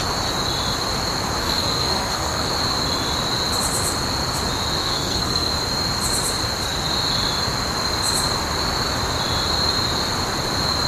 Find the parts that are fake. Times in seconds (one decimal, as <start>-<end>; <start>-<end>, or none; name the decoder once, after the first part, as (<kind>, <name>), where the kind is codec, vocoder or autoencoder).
1.4-2.5 (codec, SNAC); 4.8-5.5